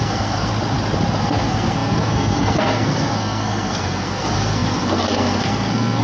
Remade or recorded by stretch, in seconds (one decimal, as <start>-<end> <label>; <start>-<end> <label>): 0.0-0.5 remade; 0.5-1.2 recorded; 1.2-6.0 remade

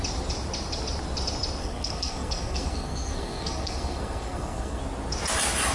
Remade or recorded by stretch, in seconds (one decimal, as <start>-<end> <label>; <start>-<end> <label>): 0.0-1.6 recorded; 1.6-4.8 remade; 4.8-5.7 recorded

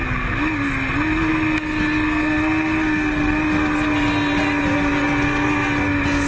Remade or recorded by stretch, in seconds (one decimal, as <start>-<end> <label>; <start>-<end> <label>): 0.0-6.3 recorded

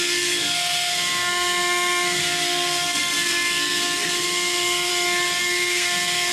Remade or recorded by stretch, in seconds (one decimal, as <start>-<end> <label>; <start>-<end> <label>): 0.0-4.9 remade; 4.9-5.4 recorded; 5.4-6.3 remade